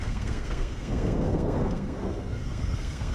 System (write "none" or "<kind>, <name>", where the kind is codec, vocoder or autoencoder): codec, SNAC